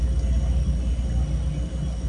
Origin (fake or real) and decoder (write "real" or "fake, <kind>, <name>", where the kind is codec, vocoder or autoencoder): real